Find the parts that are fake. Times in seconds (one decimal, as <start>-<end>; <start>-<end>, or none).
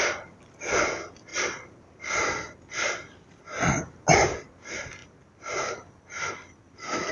none